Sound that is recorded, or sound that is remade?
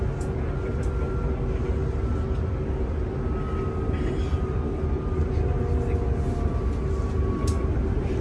recorded